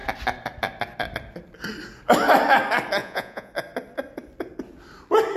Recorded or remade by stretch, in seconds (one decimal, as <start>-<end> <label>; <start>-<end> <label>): 0.0-3.0 recorded; 3.0-3.5 remade; 3.5-5.4 recorded